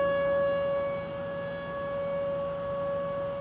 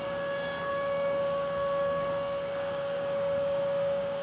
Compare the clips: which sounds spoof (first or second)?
second